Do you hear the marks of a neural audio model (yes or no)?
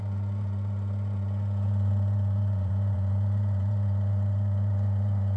yes